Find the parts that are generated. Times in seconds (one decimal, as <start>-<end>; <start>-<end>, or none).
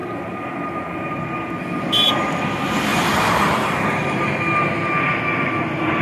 2.9-4.3